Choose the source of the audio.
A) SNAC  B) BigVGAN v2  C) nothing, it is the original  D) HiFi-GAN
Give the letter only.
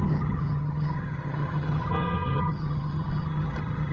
D